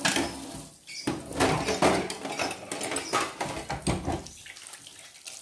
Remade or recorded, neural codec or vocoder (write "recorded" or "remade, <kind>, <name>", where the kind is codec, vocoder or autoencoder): recorded